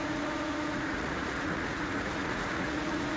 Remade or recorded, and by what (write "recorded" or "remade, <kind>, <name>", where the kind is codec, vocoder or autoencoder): remade, vocoder, Vocos